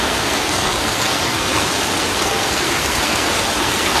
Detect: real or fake fake